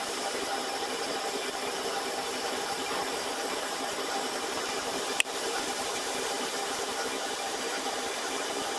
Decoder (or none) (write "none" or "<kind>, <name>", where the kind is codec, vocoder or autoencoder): vocoder, BigVGAN v2